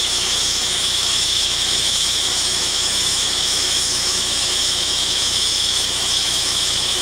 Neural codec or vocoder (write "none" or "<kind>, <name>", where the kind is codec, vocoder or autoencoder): autoencoder, DAC-VAE